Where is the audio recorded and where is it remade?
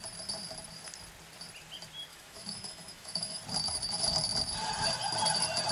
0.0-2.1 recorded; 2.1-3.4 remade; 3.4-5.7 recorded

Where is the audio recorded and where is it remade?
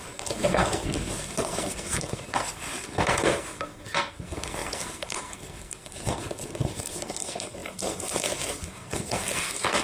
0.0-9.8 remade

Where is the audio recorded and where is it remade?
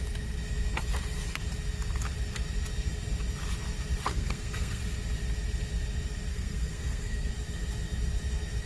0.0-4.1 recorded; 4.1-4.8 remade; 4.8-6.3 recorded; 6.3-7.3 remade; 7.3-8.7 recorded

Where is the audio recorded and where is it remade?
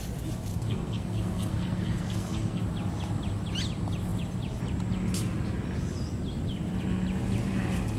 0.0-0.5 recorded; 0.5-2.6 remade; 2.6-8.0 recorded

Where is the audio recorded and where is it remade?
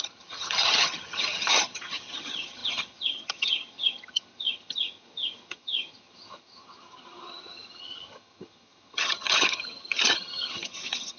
0.0-11.2 remade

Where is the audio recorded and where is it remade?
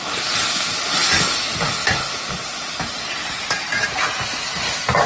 0.0-5.1 recorded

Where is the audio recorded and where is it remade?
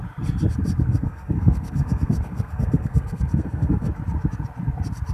0.0-0.9 recorded; 0.9-3.9 remade; 3.9-5.1 recorded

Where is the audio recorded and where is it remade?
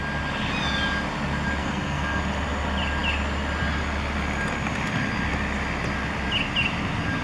0.0-1.6 recorded; 1.6-2.2 remade; 2.2-7.2 recorded